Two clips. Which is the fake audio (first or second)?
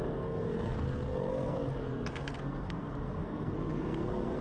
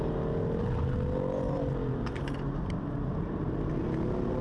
first